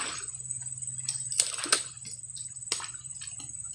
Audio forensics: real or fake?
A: real